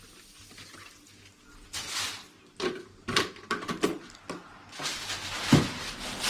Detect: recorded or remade recorded